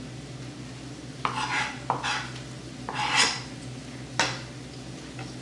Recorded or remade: recorded